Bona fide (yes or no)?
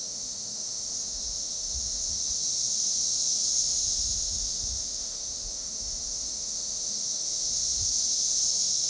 no